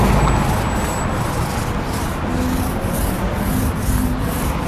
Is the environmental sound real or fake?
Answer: real